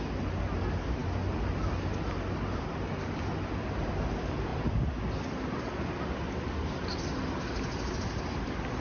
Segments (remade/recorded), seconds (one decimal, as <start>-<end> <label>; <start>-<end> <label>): 0.0-8.8 recorded